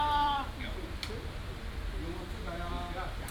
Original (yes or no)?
no